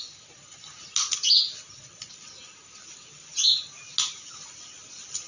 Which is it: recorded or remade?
recorded